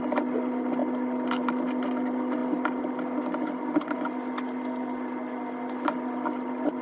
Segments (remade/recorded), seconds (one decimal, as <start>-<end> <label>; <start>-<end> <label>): 0.0-6.8 recorded